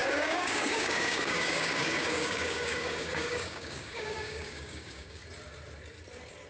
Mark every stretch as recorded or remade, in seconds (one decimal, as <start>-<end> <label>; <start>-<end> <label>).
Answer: 0.0-5.2 remade; 5.2-6.5 recorded